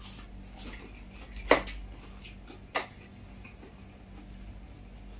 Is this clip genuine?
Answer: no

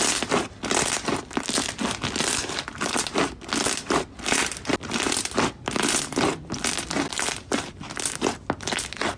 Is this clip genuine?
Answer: yes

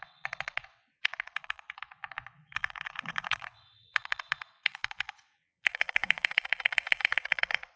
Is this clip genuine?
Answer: no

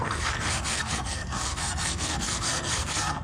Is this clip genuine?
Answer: no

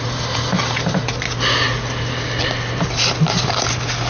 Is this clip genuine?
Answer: yes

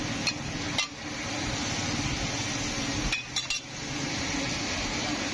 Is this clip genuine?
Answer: yes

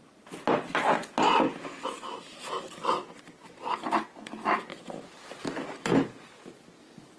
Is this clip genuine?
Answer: yes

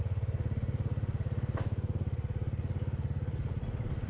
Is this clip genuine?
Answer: yes